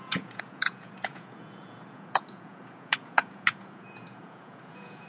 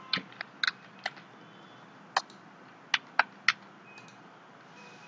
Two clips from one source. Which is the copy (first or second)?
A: first